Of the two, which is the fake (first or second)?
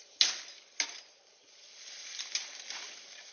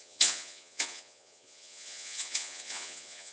second